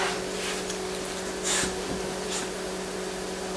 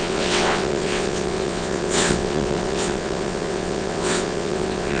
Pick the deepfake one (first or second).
second